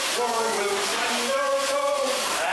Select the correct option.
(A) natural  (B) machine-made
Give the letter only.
A